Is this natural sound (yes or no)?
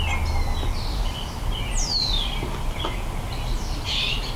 yes